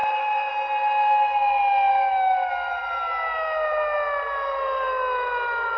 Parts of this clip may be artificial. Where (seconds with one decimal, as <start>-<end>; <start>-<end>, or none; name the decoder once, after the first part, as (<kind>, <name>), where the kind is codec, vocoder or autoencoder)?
0.0-0.5 (codec, DAC); 1.9-2.5

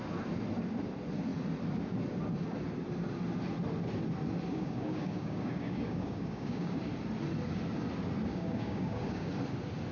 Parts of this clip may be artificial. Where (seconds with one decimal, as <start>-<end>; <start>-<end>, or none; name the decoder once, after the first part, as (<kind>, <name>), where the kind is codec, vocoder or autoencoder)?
4.5-6.8 (codec, DAC); 8.3-9.3

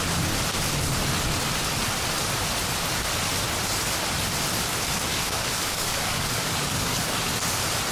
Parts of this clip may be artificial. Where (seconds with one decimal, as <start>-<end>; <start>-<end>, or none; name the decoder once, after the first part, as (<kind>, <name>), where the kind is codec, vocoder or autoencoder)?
5.1-7.2 (codec, DAC)

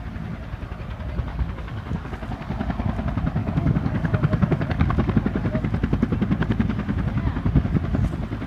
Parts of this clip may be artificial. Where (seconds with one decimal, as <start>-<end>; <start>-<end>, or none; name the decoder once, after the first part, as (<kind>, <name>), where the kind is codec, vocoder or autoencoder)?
1.3-2.1 (codec, DAC); 3.4-5.1

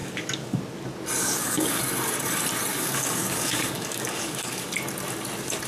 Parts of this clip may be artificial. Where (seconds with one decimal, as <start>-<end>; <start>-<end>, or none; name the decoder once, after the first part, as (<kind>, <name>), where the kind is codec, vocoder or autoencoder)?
0.0-0.6 (codec, DAC); 1.2-1.8; 2.7-4.7

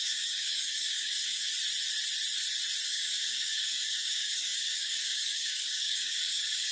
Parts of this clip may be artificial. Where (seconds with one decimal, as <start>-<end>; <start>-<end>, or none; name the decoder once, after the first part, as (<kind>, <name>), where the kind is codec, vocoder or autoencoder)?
0.0-1.5 (codec, DAC); 2.9-6.7

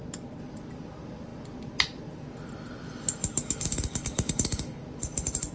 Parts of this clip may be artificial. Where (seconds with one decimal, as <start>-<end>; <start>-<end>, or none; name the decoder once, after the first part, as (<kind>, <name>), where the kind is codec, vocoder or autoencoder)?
3.4-4.8 (codec, DAC)

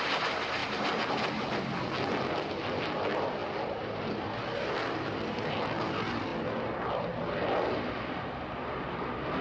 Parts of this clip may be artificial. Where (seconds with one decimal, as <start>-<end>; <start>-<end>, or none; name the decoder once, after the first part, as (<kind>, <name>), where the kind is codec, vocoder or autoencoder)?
none